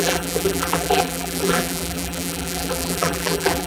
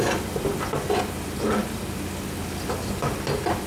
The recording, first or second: second